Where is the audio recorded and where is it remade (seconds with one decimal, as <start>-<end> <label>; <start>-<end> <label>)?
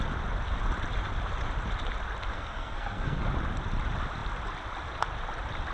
0.0-2.3 recorded; 2.3-3.2 remade; 3.2-5.7 recorded